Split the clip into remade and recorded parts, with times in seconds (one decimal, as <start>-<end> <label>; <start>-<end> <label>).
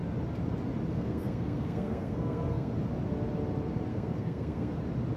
0.0-0.9 recorded; 0.9-2.7 remade; 2.7-3.9 recorded; 3.9-4.8 remade; 4.8-5.2 recorded